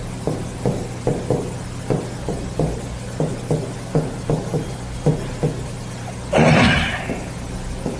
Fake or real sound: real